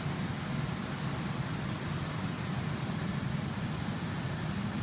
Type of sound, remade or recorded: recorded